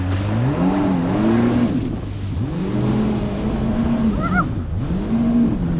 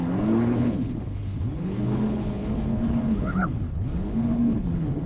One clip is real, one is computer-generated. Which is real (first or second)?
first